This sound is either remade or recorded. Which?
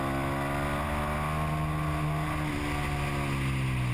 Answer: recorded